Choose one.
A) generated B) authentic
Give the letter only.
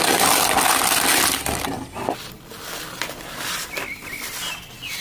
B